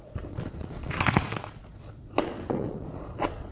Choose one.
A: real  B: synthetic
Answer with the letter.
B